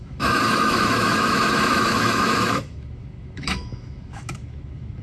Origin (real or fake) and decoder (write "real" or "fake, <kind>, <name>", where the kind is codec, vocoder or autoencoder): fake, autoencoder, DAC-VAE